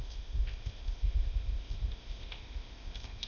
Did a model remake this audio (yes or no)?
yes